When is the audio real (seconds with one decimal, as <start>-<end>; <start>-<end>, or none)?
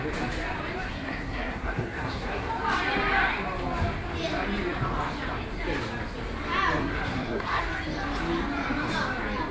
0.0-0.9; 2.5-6.8; 7.6-9.5